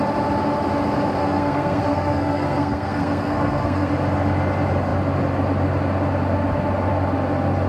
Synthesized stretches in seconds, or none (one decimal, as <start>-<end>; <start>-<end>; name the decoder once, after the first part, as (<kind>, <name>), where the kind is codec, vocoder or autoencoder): 1.2-3.9 (codec, SNAC)